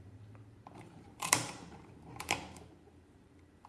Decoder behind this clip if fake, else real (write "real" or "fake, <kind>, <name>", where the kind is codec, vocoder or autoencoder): fake, vocoder, BigVGAN v2